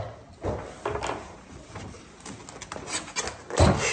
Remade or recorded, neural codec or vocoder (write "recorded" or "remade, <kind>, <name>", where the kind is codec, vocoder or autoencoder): recorded